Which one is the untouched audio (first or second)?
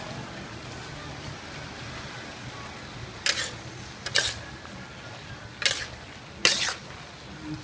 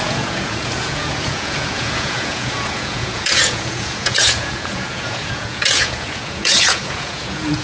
first